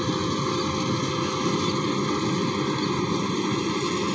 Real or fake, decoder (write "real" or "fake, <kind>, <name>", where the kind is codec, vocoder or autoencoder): real